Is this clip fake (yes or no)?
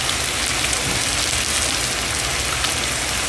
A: no